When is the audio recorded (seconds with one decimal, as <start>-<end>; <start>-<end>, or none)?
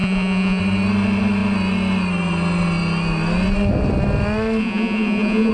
0.6-4.6